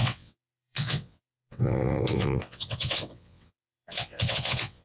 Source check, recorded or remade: remade